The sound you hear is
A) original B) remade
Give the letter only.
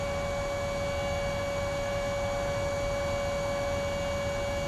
A